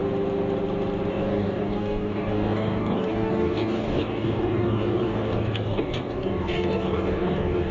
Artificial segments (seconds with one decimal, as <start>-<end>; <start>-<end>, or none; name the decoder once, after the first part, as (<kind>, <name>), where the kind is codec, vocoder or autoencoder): 1.1-7.7 (codec, DAC)